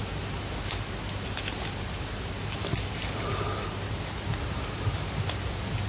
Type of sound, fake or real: real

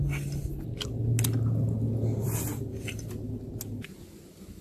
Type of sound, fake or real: real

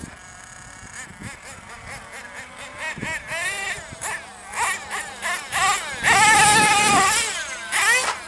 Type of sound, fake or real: real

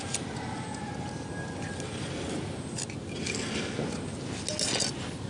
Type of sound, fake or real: real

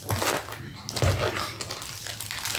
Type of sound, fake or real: real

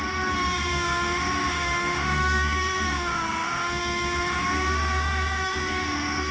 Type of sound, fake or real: fake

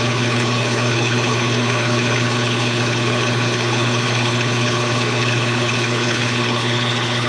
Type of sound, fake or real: fake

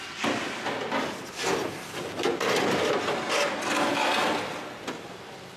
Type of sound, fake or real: real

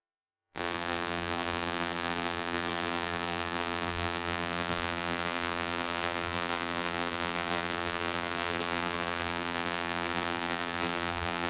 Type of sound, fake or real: fake